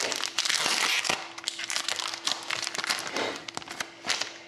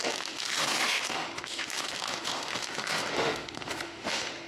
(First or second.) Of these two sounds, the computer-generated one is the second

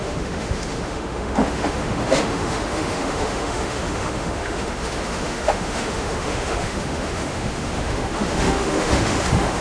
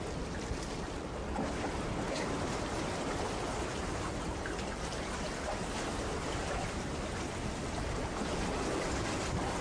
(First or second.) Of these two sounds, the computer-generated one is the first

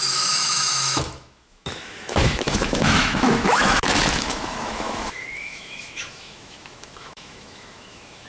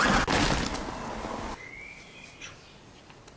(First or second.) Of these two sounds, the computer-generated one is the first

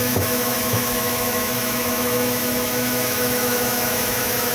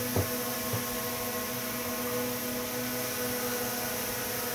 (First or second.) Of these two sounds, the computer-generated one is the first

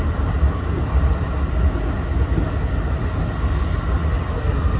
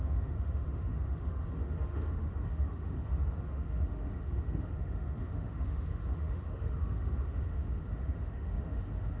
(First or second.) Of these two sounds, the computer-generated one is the second